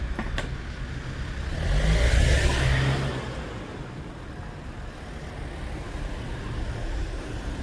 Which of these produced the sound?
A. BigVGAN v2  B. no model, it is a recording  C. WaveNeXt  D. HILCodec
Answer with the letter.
B